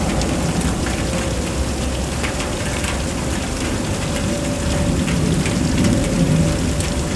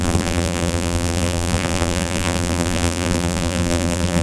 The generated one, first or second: second